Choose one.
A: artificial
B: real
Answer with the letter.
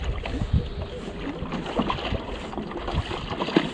B